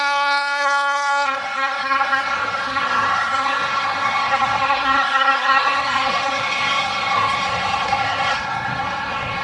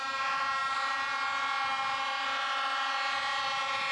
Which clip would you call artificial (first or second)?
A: first